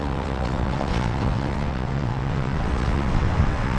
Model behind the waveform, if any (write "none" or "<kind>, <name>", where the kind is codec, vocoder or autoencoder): vocoder, WaveNeXt